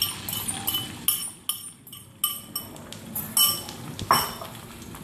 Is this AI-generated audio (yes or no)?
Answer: no